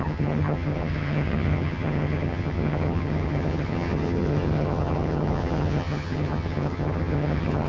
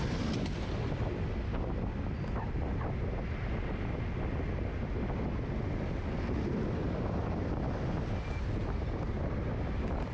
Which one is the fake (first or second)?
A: first